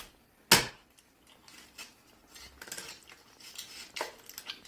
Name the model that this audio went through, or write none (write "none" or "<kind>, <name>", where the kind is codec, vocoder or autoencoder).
none